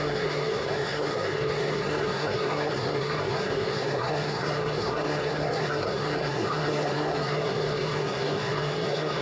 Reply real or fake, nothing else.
fake